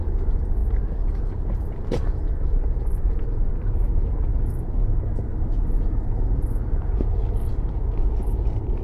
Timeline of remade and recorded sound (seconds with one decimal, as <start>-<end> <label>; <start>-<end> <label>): 0.0-8.8 remade